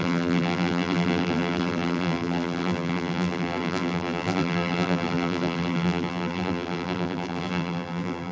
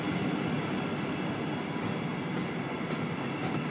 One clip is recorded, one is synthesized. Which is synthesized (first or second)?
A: first